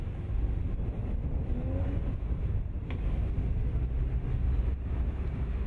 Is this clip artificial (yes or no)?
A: no